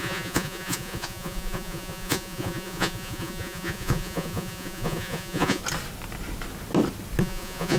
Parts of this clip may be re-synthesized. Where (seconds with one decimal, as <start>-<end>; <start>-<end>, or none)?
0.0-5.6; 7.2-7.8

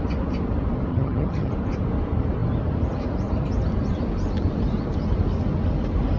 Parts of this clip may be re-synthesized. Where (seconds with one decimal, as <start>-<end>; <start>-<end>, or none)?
0.9-1.5

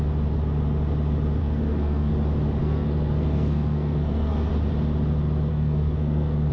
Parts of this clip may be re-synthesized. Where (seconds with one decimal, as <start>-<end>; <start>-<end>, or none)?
1.4-2.1; 2.6-4.5; 5.5-6.5